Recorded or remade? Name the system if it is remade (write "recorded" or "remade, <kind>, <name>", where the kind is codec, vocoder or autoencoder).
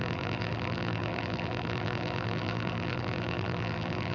remade, vocoder, BigVGAN v2